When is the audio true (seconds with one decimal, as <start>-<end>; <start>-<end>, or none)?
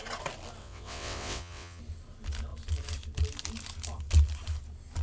0.0-0.6; 1.8-5.0